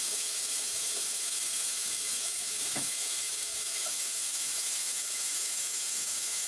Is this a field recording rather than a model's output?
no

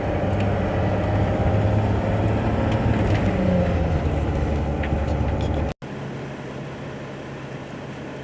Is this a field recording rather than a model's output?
yes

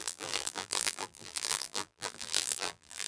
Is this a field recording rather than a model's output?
no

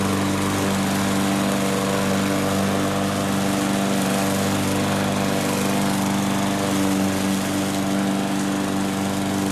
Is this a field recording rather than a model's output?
yes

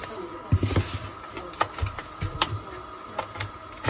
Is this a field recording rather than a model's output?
yes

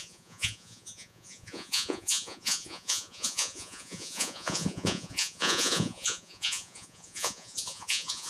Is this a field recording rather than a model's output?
no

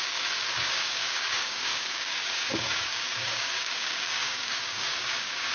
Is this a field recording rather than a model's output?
no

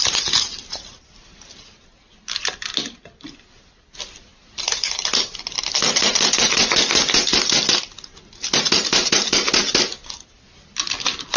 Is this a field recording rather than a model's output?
yes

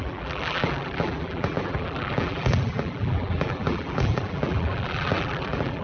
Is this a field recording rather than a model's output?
no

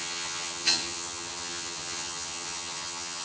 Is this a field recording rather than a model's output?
no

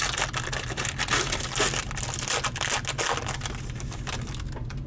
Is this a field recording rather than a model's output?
yes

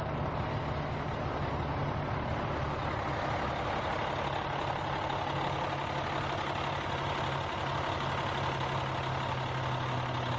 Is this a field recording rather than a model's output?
yes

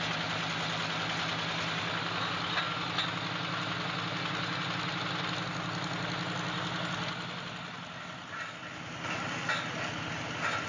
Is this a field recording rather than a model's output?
yes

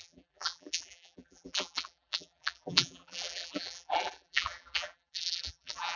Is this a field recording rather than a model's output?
no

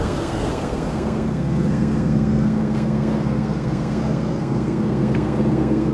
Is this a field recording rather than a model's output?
no